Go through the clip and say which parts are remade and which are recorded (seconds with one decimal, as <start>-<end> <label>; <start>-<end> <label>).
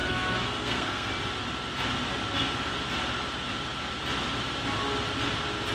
0.0-1.1 remade; 1.1-5.7 recorded